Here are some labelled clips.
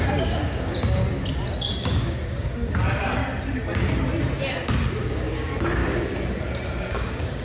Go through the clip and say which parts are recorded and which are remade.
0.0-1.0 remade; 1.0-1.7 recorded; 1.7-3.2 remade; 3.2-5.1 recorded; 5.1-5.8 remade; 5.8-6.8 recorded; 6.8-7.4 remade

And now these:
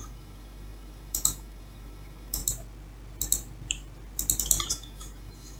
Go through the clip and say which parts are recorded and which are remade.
0.0-2.4 remade; 2.4-4.7 recorded; 4.7-5.6 remade

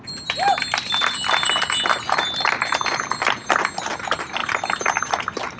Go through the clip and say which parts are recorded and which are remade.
0.0-5.6 recorded

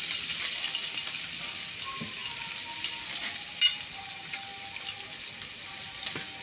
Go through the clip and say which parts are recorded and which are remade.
0.0-6.4 recorded

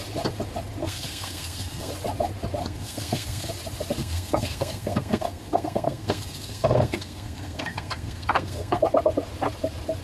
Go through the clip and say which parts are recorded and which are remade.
0.0-0.8 recorded; 0.8-1.9 remade; 1.9-2.6 recorded; 2.6-3.5 remade; 3.5-4.0 recorded; 4.0-8.8 remade; 8.8-10.0 recorded